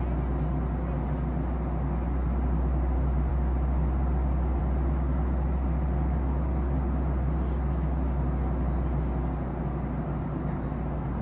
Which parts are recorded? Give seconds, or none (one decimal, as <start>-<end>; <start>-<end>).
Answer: 0.0-11.2